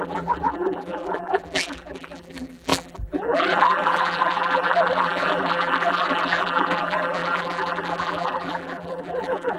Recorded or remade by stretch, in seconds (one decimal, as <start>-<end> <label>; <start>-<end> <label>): 0.0-9.6 remade